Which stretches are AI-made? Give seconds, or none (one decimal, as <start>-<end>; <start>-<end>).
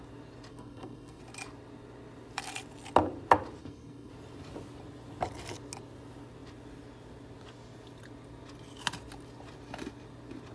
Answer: 0.5-1.2; 3.6-4.1